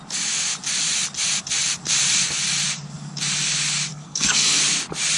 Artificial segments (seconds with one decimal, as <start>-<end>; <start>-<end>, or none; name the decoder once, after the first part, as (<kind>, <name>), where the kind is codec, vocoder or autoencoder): 3.9-4.6 (codec, SNAC)